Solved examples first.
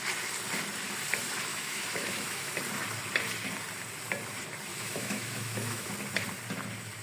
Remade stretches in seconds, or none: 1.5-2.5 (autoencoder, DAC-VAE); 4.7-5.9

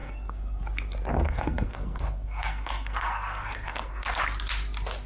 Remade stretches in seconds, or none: 0.0-0.6 (codec, SNAC); 1.1-4.2

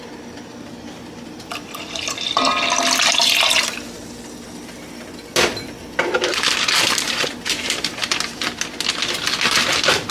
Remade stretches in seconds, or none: 0.0-2.5 (vocoder, BigVGAN v2); 6.3-8.0

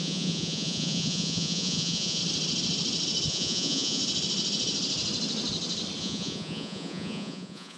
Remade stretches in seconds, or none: 0.0-2.2 (vocoder, Vocos); 3.3-4.0; 6.0-7.8

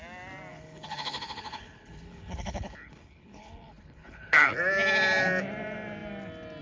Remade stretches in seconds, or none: 0.5-4.5 (codec, HILCodec)

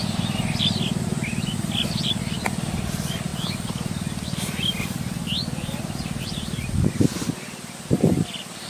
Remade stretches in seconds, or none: none

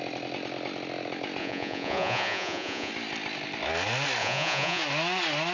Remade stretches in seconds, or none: 1.4-2.9 (vocoder, Vocos); 4.2-4.8

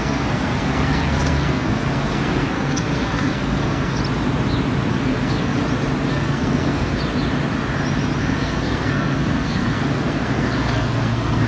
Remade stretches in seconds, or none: 0.0-4.0 (codec, SNAC); 4.9-5.6; 6.1-7.0; 8.2-11.5